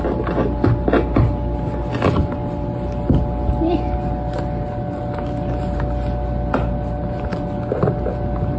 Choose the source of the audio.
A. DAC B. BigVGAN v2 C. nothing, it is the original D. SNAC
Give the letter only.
C